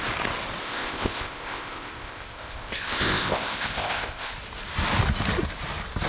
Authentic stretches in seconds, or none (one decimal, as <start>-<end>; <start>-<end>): 0.0-0.6; 4.3-6.1